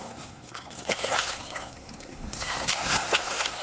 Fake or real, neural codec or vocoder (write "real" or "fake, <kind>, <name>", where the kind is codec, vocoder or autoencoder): fake, codec, SNAC